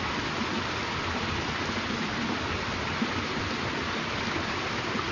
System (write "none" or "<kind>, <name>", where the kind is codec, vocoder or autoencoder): none